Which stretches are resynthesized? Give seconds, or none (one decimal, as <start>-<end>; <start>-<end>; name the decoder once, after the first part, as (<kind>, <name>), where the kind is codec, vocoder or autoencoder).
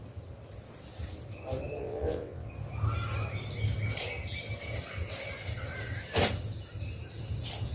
1.8-2.5 (vocoder, WaveNeXt)